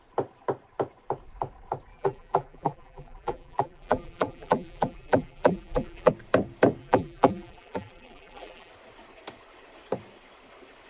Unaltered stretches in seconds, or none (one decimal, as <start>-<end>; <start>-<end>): 0.0-1.9; 6.1-6.8; 8.7-10.9